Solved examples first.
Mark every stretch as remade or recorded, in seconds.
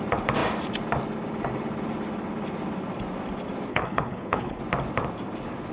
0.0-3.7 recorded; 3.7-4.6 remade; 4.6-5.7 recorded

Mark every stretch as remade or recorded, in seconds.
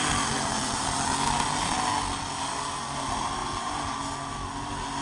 0.0-5.0 recorded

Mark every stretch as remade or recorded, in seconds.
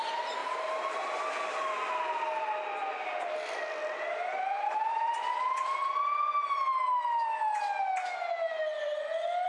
0.0-0.4 recorded; 0.4-1.3 remade; 1.3-4.3 recorded; 4.3-5.4 remade; 5.4-9.5 recorded